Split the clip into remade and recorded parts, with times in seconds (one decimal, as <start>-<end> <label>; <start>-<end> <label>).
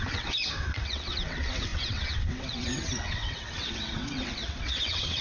0.0-5.2 remade